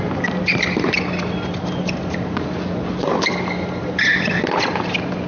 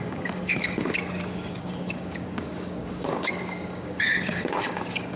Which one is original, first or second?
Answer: first